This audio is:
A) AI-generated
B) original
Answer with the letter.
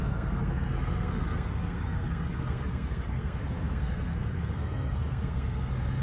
A